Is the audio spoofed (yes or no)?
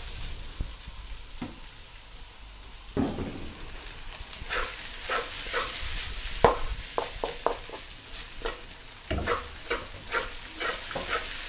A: no